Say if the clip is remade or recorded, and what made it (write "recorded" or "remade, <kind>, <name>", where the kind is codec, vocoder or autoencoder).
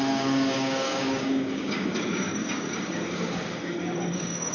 remade, codec, DAC